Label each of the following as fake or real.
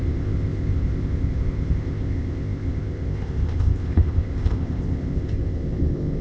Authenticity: fake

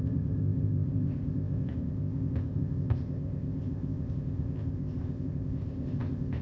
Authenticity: fake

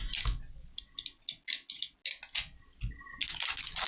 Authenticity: real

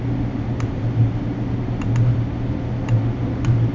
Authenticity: real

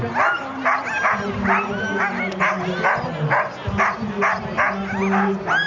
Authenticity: real